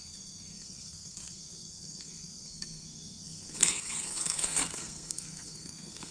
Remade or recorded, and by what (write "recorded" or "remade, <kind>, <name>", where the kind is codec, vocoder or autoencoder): remade, codec, SNAC